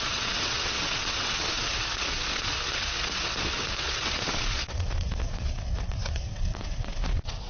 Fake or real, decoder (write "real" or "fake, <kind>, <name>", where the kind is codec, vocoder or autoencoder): fake, vocoder, WaveNeXt